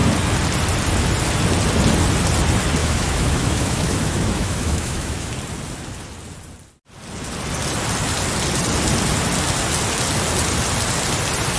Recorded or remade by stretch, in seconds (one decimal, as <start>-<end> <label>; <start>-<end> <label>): 0.0-2.8 recorded; 2.8-5.3 remade; 5.3-11.6 recorded